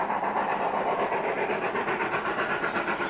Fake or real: real